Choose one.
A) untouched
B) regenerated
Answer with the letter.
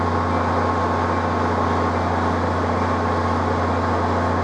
A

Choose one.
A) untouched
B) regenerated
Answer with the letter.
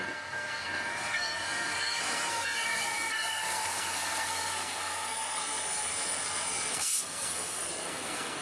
B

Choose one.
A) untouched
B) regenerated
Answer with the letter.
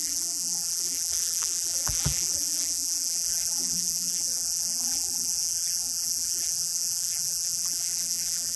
B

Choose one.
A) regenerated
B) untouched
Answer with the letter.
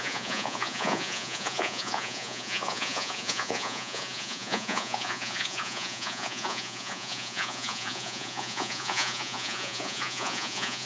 A